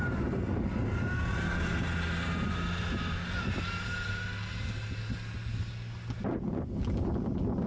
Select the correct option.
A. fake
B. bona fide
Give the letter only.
B